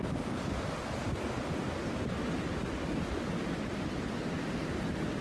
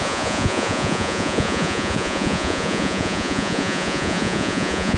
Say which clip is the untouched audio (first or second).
first